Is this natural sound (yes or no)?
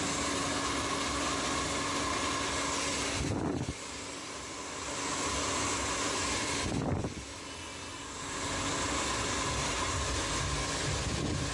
yes